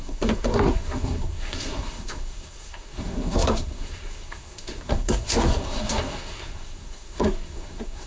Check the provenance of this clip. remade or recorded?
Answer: remade